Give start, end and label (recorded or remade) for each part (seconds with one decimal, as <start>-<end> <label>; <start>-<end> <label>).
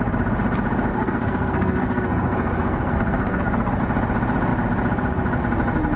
0.0-0.9 recorded; 0.9-3.8 remade; 3.8-6.0 recorded